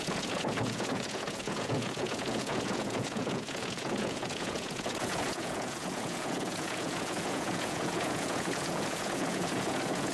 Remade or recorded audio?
remade